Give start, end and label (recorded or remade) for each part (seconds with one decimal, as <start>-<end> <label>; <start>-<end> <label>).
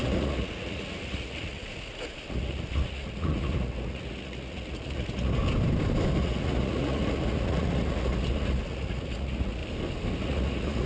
0.0-5.4 remade; 5.4-6.2 recorded; 6.2-9.6 remade; 9.6-10.2 recorded; 10.2-10.9 remade